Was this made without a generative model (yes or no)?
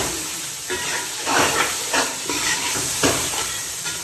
no